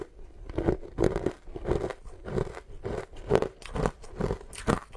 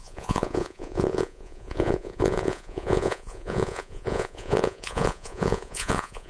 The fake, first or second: second